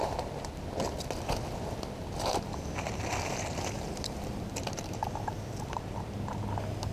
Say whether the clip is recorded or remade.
recorded